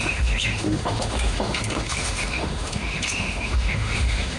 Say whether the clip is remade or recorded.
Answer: remade